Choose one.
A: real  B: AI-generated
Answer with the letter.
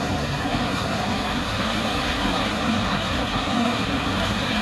B